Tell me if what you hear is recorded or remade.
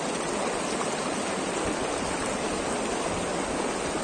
recorded